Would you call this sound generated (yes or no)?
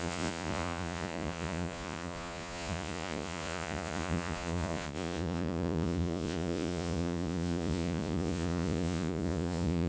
yes